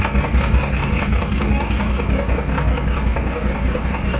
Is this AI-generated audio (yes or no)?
yes